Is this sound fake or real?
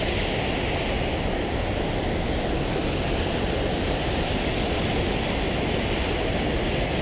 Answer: real